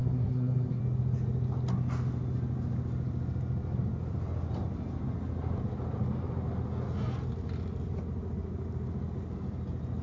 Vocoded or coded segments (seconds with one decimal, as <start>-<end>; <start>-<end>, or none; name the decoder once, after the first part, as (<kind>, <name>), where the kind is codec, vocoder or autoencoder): 0.0-0.8 (codec, SNAC)